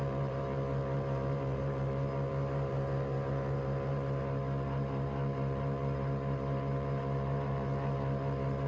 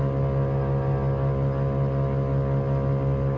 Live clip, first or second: second